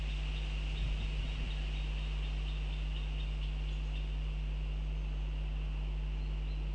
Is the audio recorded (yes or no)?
yes